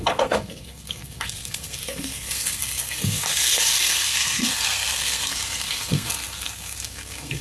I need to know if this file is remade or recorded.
remade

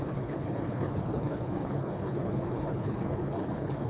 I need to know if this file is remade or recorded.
remade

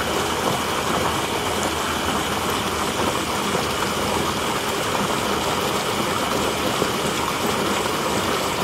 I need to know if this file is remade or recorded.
recorded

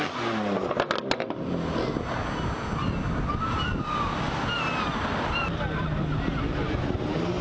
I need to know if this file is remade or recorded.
recorded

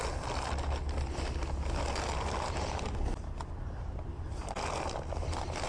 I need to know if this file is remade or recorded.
recorded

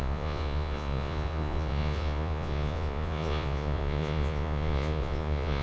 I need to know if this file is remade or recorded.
remade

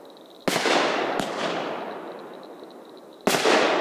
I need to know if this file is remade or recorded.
recorded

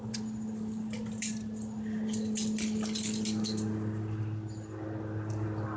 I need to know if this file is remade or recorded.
remade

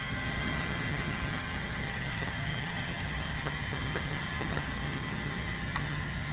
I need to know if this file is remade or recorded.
remade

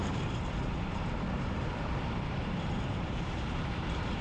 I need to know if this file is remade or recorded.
remade